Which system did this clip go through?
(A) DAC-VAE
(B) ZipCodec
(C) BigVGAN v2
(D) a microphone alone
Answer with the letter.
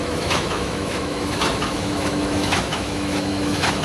A